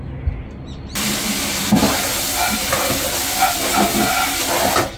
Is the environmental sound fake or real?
real